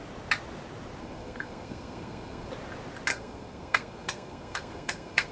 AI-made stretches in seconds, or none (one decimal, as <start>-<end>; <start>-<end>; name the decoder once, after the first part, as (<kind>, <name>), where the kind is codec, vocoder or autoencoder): 1.0-2.5 (codec, SNAC); 3.1-5.3